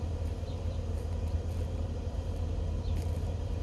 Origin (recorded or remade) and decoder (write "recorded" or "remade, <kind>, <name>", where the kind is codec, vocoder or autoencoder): recorded